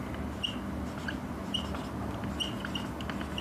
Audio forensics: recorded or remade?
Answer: recorded